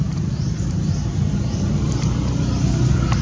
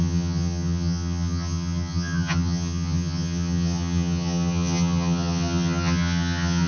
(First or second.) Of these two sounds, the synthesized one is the second